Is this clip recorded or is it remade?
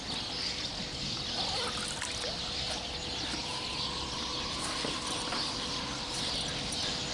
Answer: recorded